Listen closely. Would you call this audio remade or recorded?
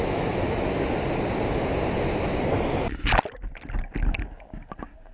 recorded